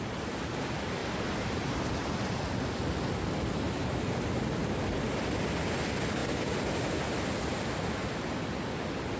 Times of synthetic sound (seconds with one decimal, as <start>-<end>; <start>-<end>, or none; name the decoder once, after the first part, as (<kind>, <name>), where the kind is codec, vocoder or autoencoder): 1.0-2.3 (vocoder, BigVGAN v2)